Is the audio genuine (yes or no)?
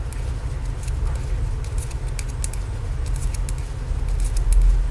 yes